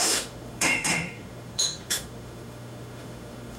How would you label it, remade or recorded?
remade